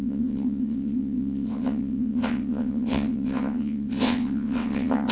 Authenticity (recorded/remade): remade